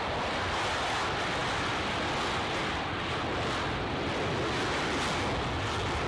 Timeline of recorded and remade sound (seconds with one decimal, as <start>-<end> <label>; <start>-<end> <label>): 0.0-6.1 recorded